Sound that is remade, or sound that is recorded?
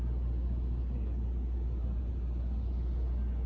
recorded